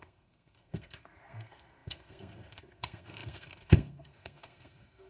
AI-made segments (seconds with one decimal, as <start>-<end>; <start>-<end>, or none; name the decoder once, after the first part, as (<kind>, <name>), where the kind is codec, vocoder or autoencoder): 0.0-5.1 (codec, SNAC)